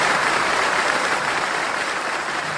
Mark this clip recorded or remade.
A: remade